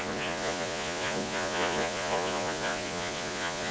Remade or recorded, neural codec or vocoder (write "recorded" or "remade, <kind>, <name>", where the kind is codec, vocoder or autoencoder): remade, vocoder, Vocos